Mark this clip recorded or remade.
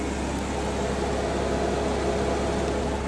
recorded